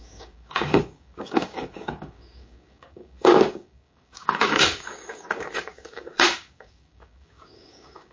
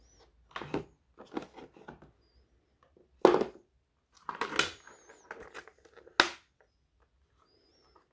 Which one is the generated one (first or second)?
first